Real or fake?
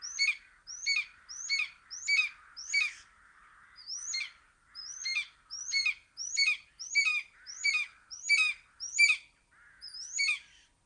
real